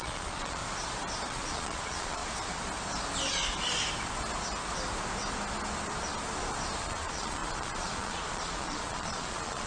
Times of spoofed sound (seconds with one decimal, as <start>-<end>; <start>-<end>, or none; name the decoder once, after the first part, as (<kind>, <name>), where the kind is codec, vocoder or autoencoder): 0.0-0.6 (vocoder, Vocos); 1.3-2.2; 6.8-9.7